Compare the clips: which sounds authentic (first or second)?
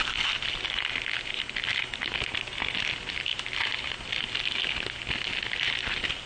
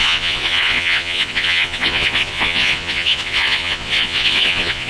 first